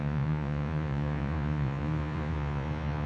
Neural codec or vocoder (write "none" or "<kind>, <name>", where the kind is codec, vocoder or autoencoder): vocoder, Vocos